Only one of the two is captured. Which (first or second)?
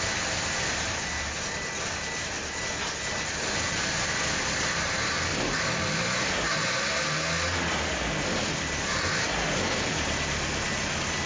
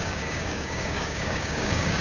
first